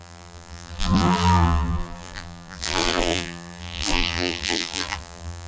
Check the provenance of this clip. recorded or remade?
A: remade